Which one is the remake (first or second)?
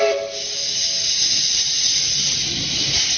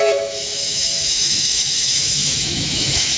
second